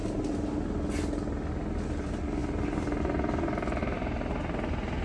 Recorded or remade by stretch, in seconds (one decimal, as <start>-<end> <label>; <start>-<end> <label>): 0.0-0.6 remade; 0.6-3.8 recorded; 3.8-4.4 remade; 4.4-5.0 recorded